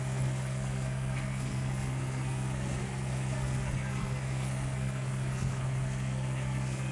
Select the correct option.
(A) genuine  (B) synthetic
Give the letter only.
B